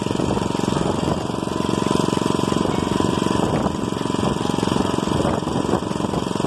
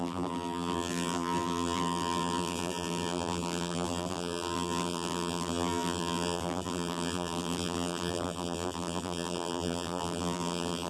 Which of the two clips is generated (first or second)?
second